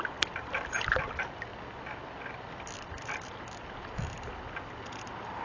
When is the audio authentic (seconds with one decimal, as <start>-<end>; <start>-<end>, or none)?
0.0-5.4